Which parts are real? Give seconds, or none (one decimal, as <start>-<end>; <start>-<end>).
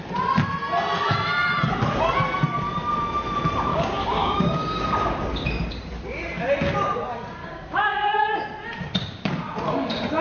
0.0-3.7; 4.8-7.4; 8.4-10.2